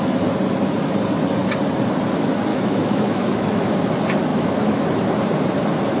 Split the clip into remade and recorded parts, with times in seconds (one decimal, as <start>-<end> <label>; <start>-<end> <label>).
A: 0.0-2.5 recorded; 2.5-3.7 remade; 3.7-4.3 recorded; 4.3-4.8 remade; 4.8-6.0 recorded